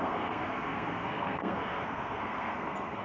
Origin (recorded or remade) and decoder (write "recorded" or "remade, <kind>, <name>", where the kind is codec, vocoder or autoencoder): remade, codec, SNAC